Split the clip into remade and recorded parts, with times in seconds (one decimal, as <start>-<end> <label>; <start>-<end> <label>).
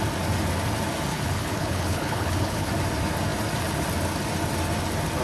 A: 0.0-1.1 recorded; 1.1-2.7 remade; 2.7-5.2 recorded